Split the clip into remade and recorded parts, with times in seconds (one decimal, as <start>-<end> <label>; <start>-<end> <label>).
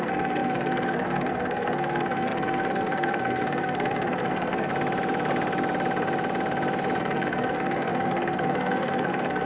0.0-4.7 remade; 4.7-7.0 recorded; 7.0-9.5 remade